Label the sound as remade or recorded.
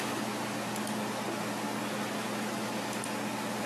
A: recorded